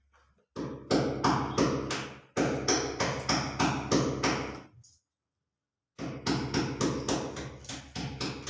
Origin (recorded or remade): recorded